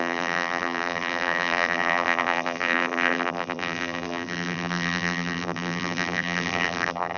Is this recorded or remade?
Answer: remade